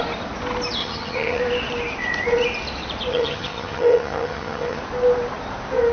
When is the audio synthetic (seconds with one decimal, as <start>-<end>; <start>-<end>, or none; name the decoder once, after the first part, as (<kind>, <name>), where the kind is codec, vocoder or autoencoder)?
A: 0.8-1.4 (vocoder, HiFi-GAN); 3.1-4.8